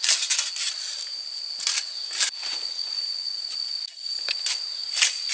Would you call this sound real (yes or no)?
yes